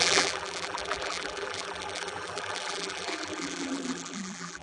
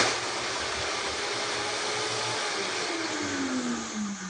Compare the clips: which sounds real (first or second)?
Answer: second